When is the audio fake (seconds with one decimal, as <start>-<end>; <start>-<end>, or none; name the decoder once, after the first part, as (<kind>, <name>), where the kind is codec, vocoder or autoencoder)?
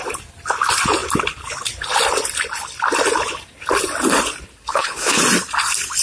4.7-5.2 (codec, HILCodec)